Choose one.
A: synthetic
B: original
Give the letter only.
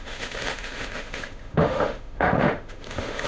A